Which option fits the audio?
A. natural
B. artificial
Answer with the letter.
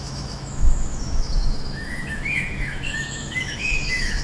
B